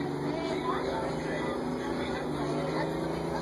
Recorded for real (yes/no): yes